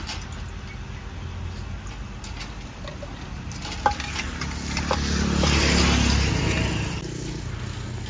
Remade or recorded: recorded